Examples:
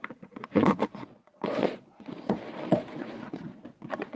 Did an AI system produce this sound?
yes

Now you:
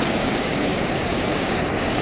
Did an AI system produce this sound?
yes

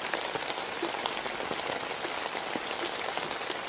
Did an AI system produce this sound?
no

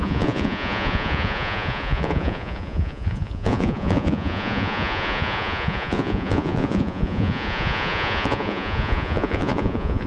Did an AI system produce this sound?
yes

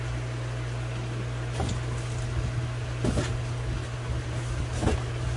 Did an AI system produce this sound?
no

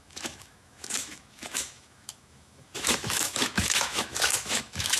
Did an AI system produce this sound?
yes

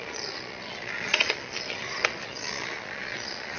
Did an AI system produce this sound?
yes